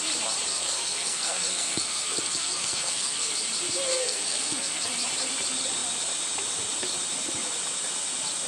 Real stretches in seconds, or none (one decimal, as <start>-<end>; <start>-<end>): 0.0-0.5; 3.3-3.9; 4.9-8.5